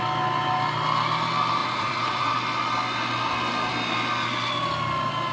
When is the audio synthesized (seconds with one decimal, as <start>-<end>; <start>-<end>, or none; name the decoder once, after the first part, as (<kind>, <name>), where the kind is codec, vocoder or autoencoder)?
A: 1.6-2.3 (vocoder, Vocos)